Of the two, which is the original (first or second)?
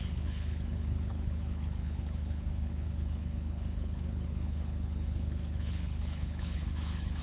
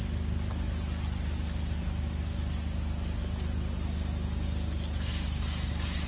second